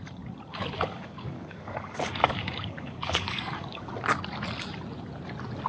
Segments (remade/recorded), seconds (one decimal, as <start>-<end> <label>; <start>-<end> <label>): 0.0-0.5 recorded; 0.5-3.9 remade; 3.9-5.7 recorded